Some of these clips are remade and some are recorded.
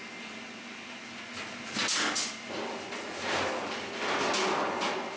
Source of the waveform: recorded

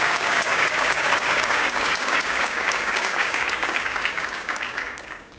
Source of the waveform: remade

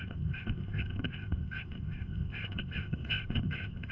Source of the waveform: remade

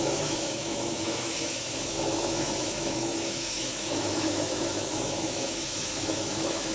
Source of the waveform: remade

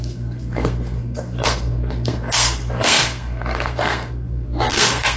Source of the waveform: remade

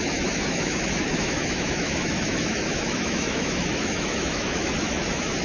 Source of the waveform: remade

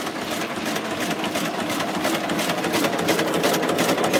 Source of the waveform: recorded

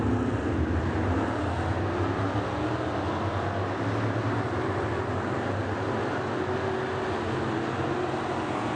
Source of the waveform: recorded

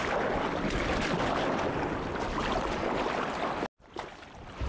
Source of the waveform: recorded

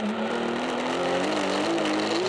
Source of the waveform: recorded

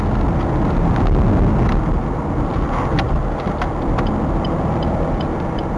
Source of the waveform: recorded